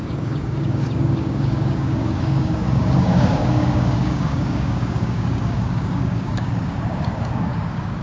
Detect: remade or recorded remade